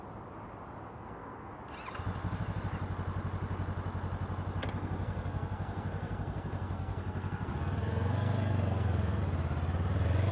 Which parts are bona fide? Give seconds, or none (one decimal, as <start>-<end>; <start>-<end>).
0.0-0.9; 1.5-4.6; 9.2-10.3